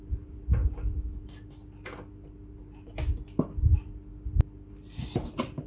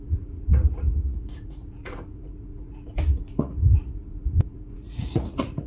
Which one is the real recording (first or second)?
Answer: first